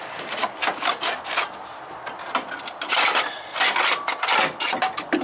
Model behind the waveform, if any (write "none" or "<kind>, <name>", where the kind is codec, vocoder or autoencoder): none